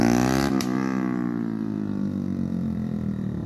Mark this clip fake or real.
fake